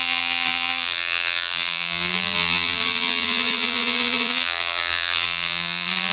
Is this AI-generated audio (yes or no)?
yes